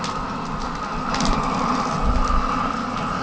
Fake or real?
real